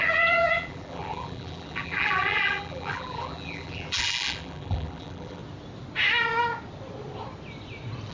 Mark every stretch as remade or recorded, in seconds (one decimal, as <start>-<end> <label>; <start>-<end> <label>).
0.0-5.4 remade; 5.4-8.1 recorded